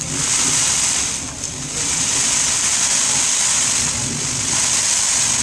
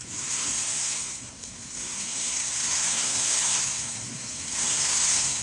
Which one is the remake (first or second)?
second